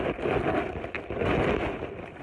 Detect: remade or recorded recorded